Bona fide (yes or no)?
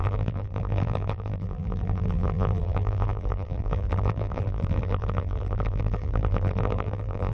no